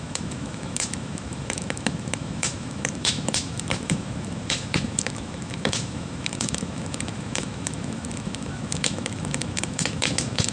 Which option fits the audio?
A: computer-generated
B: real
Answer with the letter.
A